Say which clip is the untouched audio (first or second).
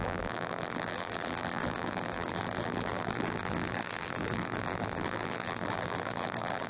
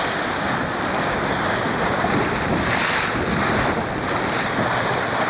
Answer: second